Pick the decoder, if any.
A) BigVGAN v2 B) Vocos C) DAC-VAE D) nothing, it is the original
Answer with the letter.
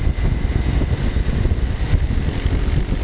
D